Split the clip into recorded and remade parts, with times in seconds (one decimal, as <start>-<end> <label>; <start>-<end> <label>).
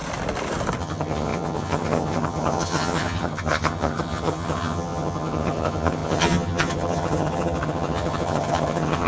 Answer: 0.0-0.8 recorded; 0.8-9.1 remade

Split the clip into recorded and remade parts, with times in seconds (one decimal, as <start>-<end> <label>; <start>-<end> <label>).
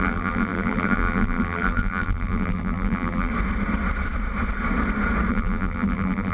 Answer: 0.0-3.3 remade; 3.3-5.3 recorded; 5.3-6.3 remade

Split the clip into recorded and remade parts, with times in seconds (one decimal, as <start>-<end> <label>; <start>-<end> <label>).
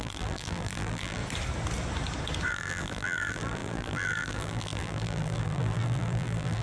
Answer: 0.0-1.2 remade; 1.2-2.5 recorded; 2.5-6.6 remade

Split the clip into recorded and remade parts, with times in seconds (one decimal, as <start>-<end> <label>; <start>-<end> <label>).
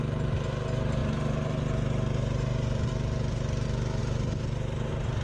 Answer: 0.0-5.2 recorded